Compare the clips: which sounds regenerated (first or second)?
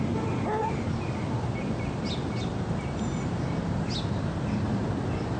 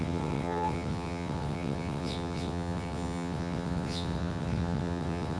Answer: second